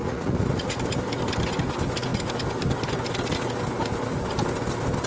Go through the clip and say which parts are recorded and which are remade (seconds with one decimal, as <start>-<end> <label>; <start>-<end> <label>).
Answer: 0.0-0.8 remade; 0.8-5.1 recorded